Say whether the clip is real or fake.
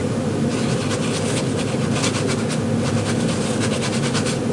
real